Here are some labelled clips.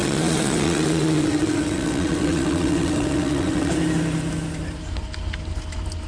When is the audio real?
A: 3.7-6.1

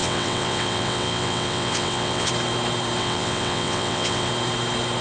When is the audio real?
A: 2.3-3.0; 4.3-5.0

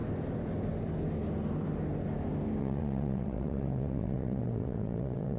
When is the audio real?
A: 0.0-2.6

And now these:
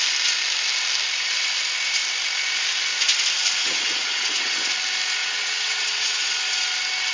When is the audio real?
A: 0.0-3.6; 4.7-5.2; 6.3-7.1

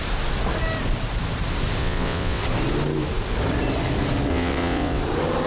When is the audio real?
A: 0.0-1.8; 2.4-4.3; 5.0-5.5

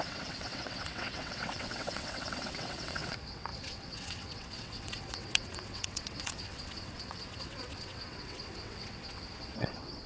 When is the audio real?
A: none

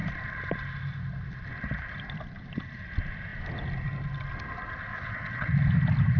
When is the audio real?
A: 0.0-4.9; 5.5-6.2